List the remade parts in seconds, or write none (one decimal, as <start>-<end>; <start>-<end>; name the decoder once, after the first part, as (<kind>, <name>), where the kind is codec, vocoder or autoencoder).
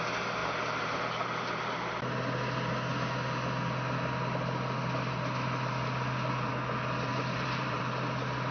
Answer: 0.4-1.0 (vocoder, BigVGAN v2); 7.1-7.8